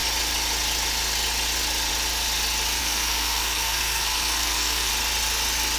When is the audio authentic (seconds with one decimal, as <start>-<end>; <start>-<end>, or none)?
0.0-2.8; 4.9-5.8